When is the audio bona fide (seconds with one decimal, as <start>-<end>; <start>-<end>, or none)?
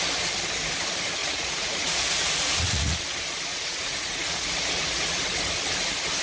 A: 0.0-1.2; 3.0-3.5; 5.2-6.2